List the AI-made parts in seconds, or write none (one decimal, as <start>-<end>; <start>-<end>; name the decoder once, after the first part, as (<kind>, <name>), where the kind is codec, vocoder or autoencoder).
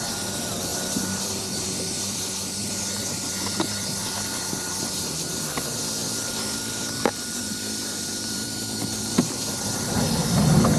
0.7-2.6 (vocoder, BigVGAN v2); 6.0-10.4